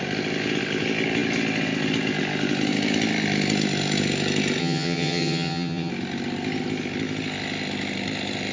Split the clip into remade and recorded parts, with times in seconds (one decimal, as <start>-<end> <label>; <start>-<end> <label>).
0.0-4.6 recorded; 4.6-5.9 remade; 5.9-8.5 recorded